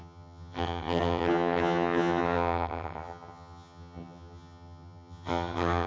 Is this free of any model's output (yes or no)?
no